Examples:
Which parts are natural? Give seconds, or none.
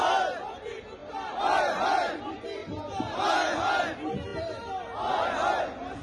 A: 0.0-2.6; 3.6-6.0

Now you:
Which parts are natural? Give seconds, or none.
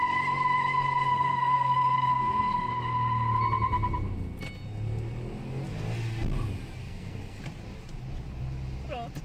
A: 0.0-1.1; 2.7-6.8; 7.4-9.2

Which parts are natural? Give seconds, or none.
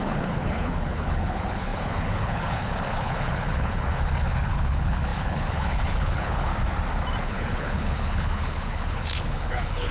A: 6.5-7.2